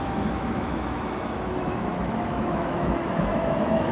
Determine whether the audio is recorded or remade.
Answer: remade